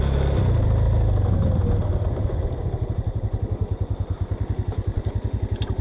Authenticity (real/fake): real